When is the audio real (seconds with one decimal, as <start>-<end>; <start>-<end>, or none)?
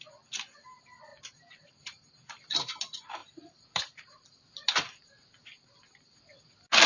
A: 0.0-1.1; 1.7-3.2; 6.4-6.9